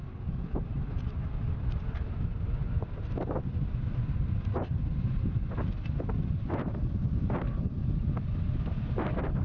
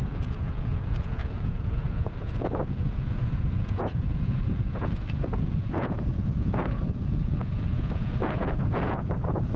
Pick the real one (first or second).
first